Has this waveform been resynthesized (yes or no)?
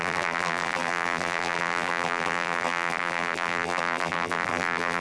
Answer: yes